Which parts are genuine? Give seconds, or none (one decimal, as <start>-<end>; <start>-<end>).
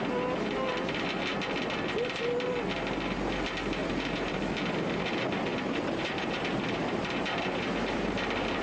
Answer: 0.0-3.8; 4.4-5.5; 8.1-8.6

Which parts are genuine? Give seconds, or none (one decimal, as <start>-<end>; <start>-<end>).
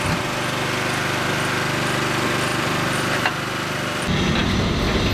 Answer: 0.0-2.5; 4.0-5.1